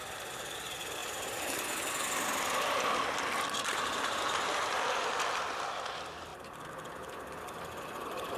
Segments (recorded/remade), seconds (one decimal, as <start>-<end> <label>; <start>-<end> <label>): 0.0-1.0 recorded; 1.0-1.5 remade; 1.5-8.4 recorded